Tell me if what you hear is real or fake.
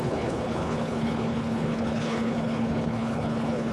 fake